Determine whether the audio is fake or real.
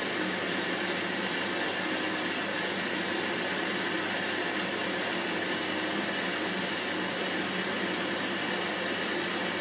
real